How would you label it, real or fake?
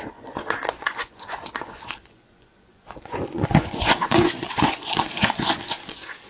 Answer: fake